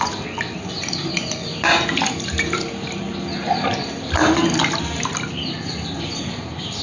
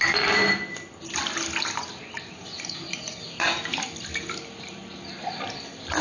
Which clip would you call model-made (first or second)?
second